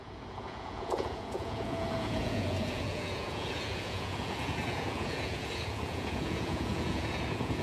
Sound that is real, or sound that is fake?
fake